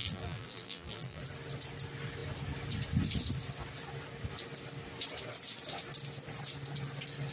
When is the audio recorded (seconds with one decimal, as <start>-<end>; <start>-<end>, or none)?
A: 1.2-7.3